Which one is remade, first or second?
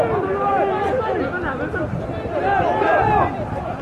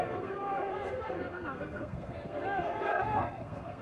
second